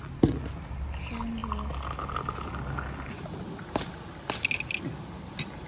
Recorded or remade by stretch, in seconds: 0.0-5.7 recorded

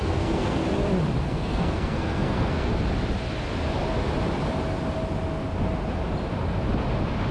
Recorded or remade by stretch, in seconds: 0.0-0.6 remade; 0.6-1.2 recorded; 1.2-2.7 remade; 2.7-7.3 recorded

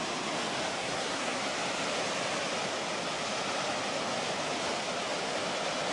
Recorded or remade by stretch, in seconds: 0.0-0.8 recorded; 0.8-1.4 remade; 1.4-5.9 recorded

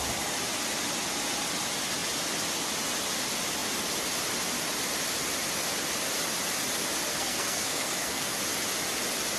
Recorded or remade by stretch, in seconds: 0.0-7.1 recorded; 7.1-8.4 remade; 8.4-9.4 recorded

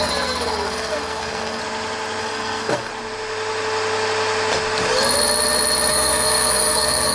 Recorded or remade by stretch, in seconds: 0.0-1.6 remade; 1.6-2.2 recorded; 2.2-2.9 remade; 2.9-5.9 recorded; 5.9-7.1 remade

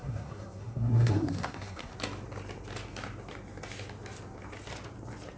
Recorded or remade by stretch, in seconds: 0.0-1.9 remade; 1.9-5.4 recorded

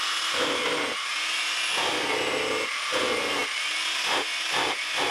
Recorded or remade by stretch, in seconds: 0.0-5.1 recorded

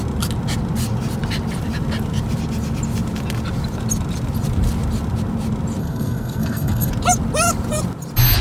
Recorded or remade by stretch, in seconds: 0.0-5.8 recorded; 5.8-6.9 remade; 6.9-8.4 recorded